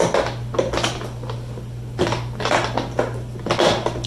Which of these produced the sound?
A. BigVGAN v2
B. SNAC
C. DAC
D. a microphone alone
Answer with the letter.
D